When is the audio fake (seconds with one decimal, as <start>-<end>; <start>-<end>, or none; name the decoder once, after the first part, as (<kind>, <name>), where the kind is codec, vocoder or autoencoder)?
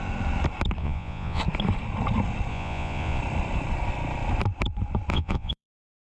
0.8-1.4 (vocoder, Vocos); 2.5-3.2; 5.1-6.1